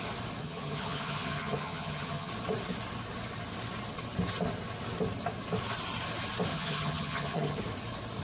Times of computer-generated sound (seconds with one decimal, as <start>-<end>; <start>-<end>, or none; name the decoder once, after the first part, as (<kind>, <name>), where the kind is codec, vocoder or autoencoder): 0.4-2.3 (vocoder, HiFi-GAN); 6.5-7.6